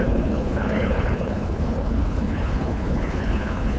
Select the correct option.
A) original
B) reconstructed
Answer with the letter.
B